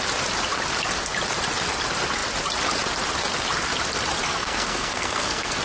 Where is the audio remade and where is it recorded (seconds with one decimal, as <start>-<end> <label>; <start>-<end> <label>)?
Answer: 0.0-4.3 recorded; 4.3-5.6 remade